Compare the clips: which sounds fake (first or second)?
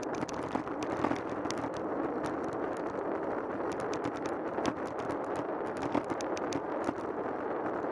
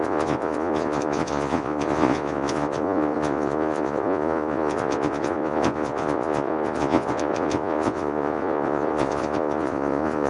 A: second